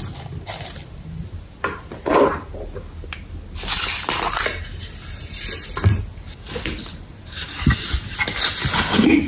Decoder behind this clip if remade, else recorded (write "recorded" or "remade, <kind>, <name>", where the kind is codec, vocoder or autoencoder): recorded